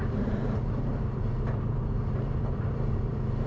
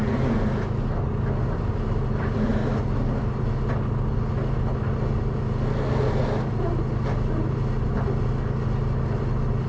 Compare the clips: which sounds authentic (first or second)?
second